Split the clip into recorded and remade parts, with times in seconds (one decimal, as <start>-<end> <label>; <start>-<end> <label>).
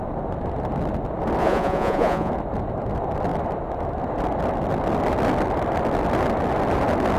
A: 0.0-1.4 recorded; 1.4-2.3 remade; 2.3-7.2 recorded